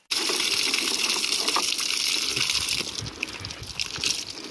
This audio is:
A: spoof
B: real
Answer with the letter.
B